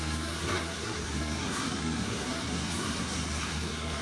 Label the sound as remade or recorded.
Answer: remade